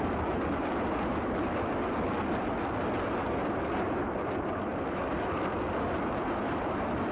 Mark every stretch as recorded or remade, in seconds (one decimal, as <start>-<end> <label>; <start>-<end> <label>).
0.0-7.1 recorded